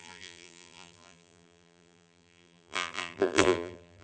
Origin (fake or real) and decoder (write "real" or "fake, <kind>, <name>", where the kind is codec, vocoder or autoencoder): fake, vocoder, BigVGAN v2